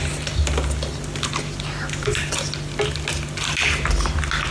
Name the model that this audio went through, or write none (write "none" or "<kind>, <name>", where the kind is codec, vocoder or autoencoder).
none